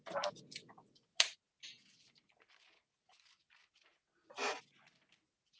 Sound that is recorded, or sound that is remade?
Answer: recorded